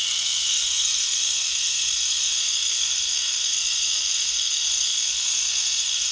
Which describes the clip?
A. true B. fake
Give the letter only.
B